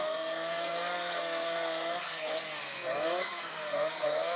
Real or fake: fake